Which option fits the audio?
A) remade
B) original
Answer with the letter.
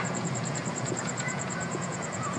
A